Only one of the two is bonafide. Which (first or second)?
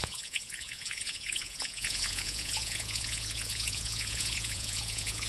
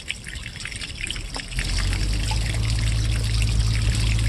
second